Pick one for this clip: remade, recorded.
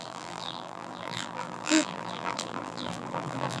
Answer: remade